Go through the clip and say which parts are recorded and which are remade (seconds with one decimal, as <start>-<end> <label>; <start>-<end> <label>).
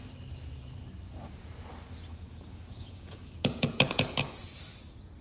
0.0-2.1 recorded; 2.1-4.6 remade; 4.6-5.2 recorded